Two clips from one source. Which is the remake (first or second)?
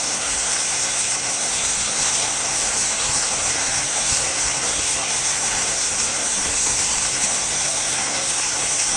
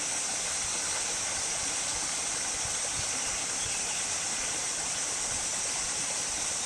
first